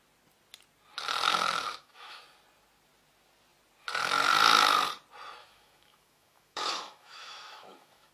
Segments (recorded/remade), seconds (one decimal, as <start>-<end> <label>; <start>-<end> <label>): 0.0-1.3 recorded; 1.3-2.2 remade; 2.2-5.4 recorded; 5.4-8.1 remade